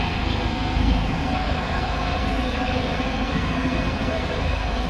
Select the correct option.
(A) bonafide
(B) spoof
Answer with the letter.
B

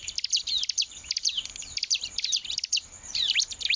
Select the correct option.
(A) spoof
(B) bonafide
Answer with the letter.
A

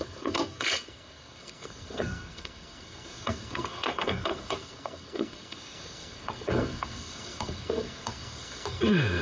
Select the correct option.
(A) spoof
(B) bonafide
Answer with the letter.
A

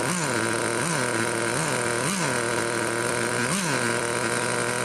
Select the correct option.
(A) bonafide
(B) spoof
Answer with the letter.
A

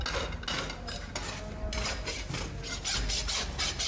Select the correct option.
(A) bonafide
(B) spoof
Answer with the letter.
A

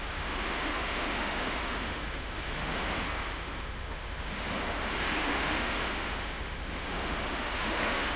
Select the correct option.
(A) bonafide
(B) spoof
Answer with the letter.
B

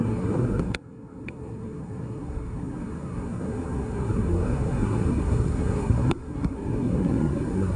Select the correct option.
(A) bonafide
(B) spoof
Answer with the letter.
B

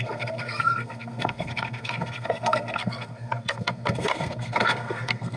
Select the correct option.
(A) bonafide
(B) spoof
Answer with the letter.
B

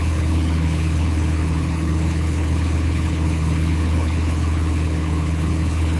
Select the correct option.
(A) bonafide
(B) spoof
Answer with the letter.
B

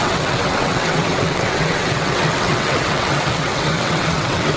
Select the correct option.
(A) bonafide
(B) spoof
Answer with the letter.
B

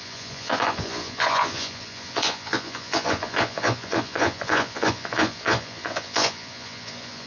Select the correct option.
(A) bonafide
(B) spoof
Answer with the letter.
B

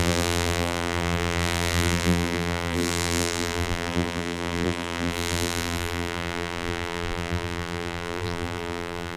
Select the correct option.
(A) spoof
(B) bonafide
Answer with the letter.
A